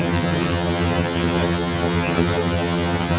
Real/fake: fake